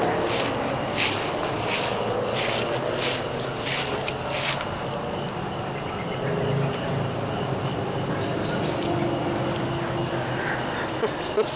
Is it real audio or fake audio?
real